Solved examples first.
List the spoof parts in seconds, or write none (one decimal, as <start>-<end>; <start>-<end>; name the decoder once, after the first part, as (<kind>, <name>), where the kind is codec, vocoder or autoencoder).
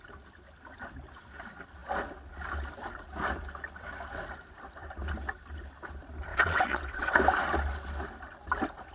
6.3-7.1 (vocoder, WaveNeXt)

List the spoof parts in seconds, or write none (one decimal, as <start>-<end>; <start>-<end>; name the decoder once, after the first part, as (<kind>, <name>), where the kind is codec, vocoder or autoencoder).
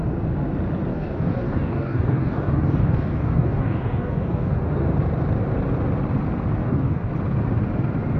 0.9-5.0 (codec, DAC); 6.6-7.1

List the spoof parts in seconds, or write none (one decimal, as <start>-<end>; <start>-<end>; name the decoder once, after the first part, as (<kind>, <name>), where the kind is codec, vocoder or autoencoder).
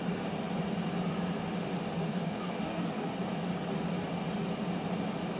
2.0-3.2 (codec, DAC)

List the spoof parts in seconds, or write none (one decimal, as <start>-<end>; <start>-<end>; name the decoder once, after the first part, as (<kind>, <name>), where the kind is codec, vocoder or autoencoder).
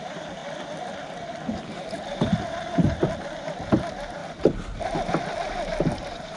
0.0-0.4 (vocoder, BigVGAN v2); 1.9-4.2; 5.9-6.4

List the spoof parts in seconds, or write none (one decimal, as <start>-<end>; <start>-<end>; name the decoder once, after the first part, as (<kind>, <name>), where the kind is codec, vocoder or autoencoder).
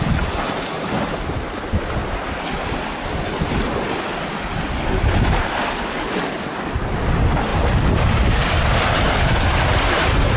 none